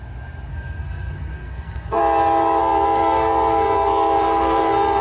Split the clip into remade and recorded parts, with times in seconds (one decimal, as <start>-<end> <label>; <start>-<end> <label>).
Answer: 0.0-0.5 recorded; 0.5-2.0 remade; 2.0-2.6 recorded; 2.6-5.0 remade